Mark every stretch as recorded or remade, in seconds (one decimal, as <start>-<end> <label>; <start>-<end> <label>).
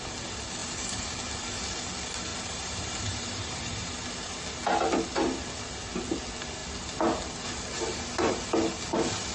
0.0-0.6 recorded; 0.6-1.1 remade; 1.1-2.3 recorded; 2.3-3.9 remade; 3.9-9.3 recorded